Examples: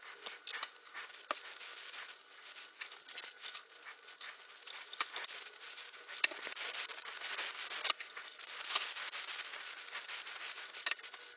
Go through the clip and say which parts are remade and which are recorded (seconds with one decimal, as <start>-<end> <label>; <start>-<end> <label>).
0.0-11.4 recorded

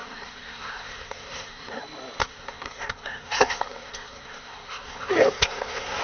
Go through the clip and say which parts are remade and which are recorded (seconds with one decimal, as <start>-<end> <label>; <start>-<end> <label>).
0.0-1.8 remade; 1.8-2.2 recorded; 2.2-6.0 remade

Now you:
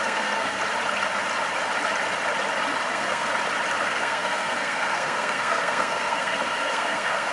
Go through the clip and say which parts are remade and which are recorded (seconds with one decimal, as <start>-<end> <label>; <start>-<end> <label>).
0.0-0.6 remade; 0.6-2.9 recorded; 2.9-3.3 remade; 3.3-3.8 recorded; 3.8-7.3 remade

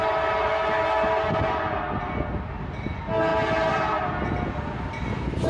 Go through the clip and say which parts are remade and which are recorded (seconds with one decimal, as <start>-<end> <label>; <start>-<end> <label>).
0.0-5.5 recorded

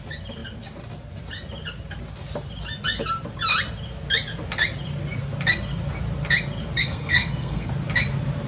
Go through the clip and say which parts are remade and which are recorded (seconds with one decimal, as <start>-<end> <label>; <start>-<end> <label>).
0.0-6.8 recorded; 6.8-7.7 remade; 7.7-8.5 recorded